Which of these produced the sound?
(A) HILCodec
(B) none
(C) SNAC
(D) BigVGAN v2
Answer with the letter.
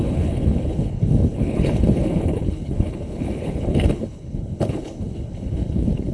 A